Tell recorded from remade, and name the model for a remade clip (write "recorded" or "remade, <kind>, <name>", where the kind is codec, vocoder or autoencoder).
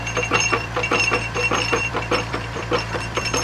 remade, vocoder, BigVGAN v2